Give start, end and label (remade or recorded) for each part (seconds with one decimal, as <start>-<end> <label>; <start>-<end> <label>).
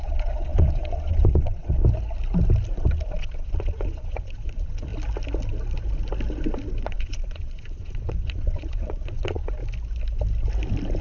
0.0-1.8 remade; 1.8-2.7 recorded; 2.7-4.9 remade; 4.9-6.8 recorded; 6.8-9.6 remade; 9.6-11.0 recorded